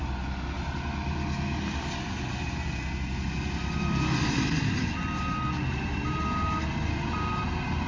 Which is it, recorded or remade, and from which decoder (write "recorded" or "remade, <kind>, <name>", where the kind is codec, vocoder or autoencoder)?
recorded